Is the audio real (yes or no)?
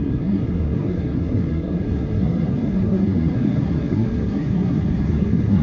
no